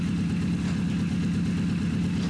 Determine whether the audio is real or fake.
real